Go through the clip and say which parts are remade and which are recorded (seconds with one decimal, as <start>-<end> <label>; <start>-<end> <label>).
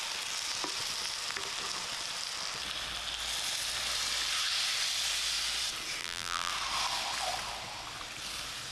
0.0-6.0 recorded; 6.0-6.5 remade; 6.5-8.7 recorded